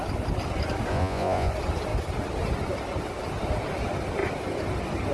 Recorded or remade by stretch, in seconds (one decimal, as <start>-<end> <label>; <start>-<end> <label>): 0.0-0.9 recorded; 0.9-1.5 remade; 1.5-5.1 recorded